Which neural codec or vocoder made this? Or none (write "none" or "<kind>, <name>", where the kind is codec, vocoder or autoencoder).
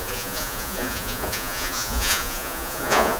vocoder, Vocos